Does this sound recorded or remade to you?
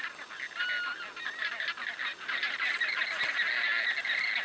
recorded